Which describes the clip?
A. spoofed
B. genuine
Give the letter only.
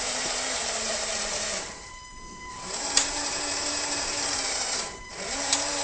A